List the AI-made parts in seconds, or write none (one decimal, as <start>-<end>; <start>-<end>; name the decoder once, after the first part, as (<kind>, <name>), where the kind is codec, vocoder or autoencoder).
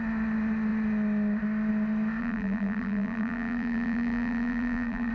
2.2-5.1 (vocoder, BigVGAN v2)